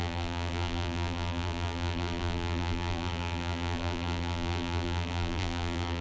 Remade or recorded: remade